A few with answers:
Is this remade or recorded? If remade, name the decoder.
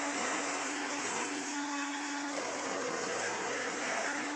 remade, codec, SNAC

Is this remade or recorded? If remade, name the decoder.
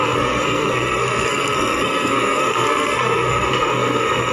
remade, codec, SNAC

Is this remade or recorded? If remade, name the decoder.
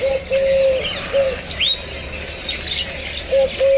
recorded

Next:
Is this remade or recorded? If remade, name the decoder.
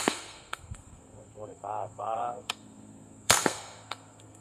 remade, codec, SNAC